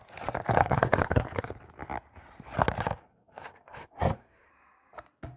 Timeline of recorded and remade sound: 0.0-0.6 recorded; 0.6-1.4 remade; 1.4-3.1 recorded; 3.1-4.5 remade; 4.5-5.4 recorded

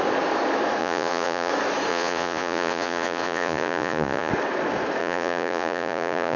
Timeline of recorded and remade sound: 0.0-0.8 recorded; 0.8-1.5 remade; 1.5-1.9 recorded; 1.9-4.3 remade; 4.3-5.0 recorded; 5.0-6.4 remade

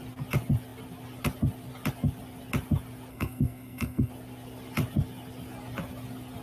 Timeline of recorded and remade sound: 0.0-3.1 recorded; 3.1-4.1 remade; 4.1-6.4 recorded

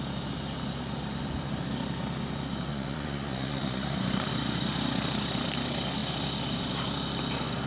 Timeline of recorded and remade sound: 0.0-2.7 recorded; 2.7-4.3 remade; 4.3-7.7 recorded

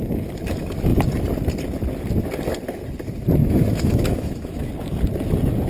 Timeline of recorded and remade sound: 0.0-3.4 recorded; 3.4-4.7 remade; 4.7-5.7 recorded

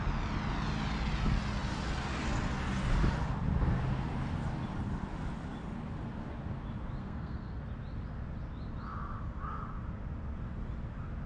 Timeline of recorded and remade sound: 0.0-7.0 recorded; 7.0-7.6 remade; 7.6-11.3 recorded

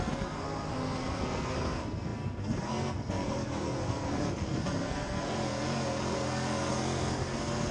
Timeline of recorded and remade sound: 0.0-7.7 remade